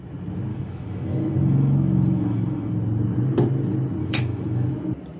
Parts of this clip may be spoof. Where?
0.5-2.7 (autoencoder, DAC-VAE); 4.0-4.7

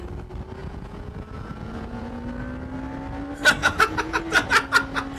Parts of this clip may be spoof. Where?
0.6-2.2 (vocoder, Vocos); 3.6-4.2

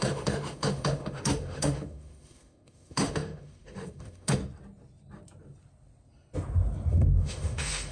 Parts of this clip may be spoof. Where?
0.0-4.4 (autoencoder, DAC-VAE); 6.9-7.9

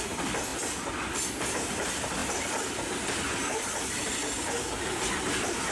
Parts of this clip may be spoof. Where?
none

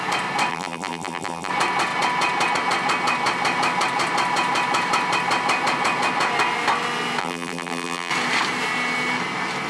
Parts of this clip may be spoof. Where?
0.5-1.5 (vocoder, BigVGAN v2); 7.2-8.1